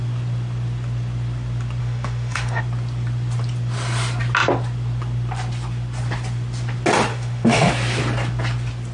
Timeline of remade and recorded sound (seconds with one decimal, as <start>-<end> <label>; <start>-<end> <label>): 0.0-1.8 recorded; 1.8-2.6 remade; 2.6-7.1 recorded; 7.1-7.7 remade; 7.7-8.9 recorded